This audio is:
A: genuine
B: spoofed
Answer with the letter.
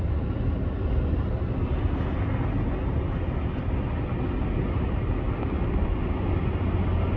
A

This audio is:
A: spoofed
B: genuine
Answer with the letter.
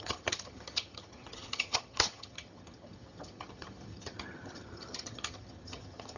A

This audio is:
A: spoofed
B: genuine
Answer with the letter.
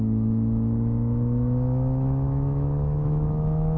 A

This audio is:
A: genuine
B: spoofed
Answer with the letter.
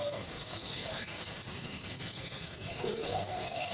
B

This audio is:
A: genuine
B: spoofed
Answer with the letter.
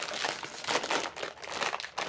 A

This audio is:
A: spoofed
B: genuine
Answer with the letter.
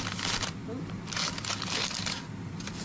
B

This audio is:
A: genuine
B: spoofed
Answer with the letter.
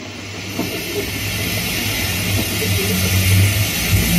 A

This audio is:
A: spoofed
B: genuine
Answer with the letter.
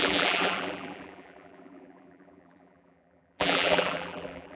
A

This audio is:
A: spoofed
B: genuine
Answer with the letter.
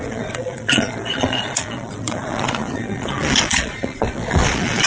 A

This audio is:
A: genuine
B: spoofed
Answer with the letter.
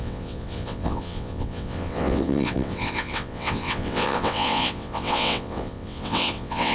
B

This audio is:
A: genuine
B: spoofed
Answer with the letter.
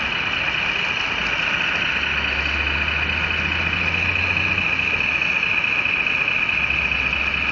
A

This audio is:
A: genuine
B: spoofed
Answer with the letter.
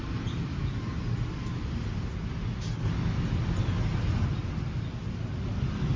A